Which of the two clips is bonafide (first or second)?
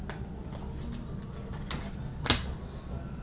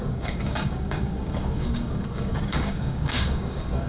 first